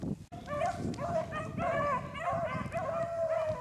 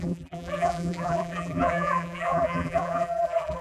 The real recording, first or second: first